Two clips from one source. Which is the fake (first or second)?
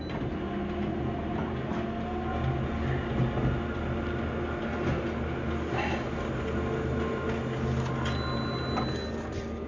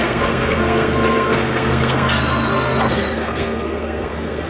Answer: second